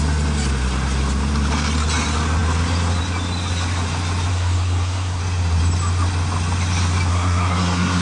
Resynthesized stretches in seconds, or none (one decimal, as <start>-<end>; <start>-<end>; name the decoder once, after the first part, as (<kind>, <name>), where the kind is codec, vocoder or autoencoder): 4.3-5.2 (codec, SNAC); 7.1-8.0